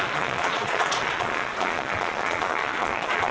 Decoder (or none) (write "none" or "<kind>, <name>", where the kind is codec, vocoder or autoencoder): vocoder, Vocos